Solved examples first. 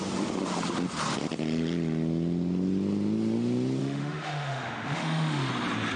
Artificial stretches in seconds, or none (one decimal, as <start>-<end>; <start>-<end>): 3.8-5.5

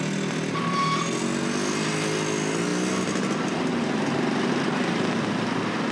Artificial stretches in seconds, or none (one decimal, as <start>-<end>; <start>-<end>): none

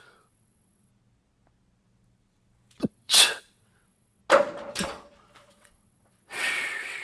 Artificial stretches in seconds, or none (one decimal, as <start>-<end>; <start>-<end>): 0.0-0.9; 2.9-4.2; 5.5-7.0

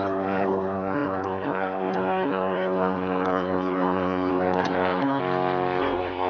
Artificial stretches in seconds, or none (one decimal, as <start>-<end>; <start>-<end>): 0.0-5.2; 5.8-6.3

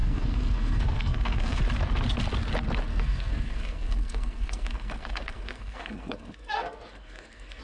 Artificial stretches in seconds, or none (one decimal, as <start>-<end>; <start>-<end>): 0.0-1.6; 2.9-7.6

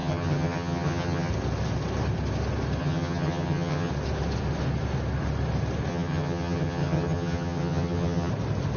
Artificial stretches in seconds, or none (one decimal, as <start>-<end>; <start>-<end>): 0.0-1.3; 2.8-3.9; 5.9-8.3

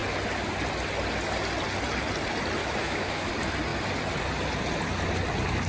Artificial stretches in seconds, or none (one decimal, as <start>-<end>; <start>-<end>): 2.6-3.3